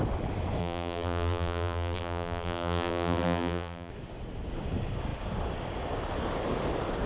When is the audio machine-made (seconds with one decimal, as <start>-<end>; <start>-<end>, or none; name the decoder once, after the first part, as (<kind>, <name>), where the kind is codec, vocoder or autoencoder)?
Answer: 0.6-3.9 (vocoder, BigVGAN v2)